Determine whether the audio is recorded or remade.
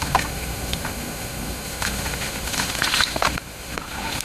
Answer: remade